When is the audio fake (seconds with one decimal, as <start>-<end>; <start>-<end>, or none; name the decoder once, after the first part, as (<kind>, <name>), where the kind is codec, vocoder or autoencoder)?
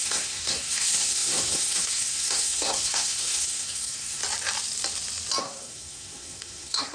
0.0-4.2 (codec, SNAC); 5.4-6.9